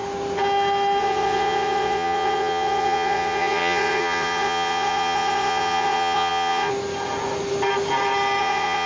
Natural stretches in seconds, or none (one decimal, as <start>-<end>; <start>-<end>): 0.0-1.0; 6.7-8.4